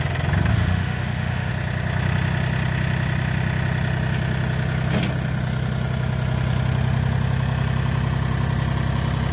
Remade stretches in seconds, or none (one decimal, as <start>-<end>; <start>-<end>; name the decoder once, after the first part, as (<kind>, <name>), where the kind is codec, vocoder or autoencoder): 0.5-1.5 (autoencoder, DAC-VAE)